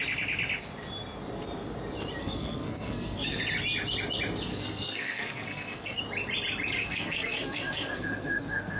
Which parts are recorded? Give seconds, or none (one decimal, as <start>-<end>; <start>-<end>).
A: 0.0-2.2; 3.4-4.5; 6.0-6.8